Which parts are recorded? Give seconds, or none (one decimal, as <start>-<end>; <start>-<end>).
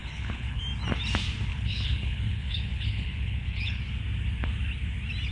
0.6-1.5; 3.8-5.3